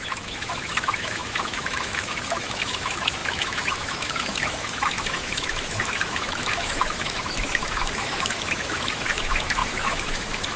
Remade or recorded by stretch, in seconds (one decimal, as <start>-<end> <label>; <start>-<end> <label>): 0.0-10.6 remade